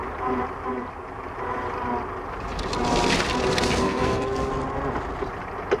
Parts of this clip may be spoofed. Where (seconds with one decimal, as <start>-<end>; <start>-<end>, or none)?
3.8-4.5